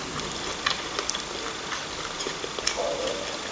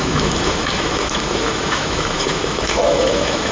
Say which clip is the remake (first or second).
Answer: second